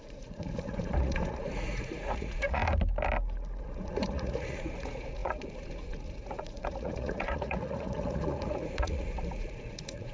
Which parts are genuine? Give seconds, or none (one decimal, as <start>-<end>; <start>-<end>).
2.6-3.6